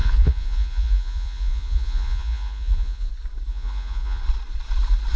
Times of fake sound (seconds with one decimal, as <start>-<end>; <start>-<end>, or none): 0.0-3.1; 3.5-4.2